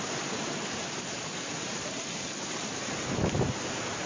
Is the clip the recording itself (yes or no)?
no